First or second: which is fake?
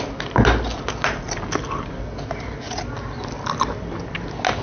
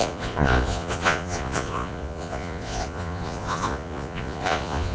second